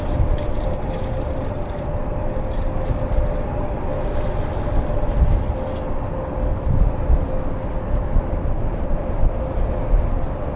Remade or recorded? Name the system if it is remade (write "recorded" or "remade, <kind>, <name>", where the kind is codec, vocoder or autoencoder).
recorded